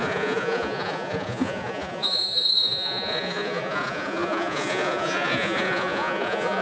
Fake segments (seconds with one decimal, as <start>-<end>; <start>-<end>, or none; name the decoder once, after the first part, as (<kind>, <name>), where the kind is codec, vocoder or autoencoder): 0.0-6.6 (vocoder, Vocos)